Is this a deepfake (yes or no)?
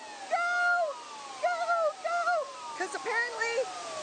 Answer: no